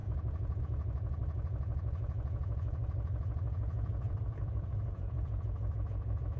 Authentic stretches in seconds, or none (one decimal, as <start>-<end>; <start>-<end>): none

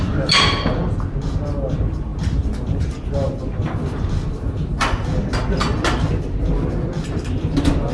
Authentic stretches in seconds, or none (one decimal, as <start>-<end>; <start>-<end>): 0.0-7.9